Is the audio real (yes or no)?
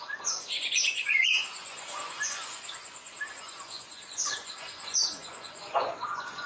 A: no